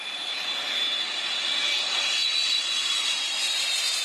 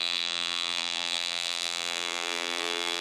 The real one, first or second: first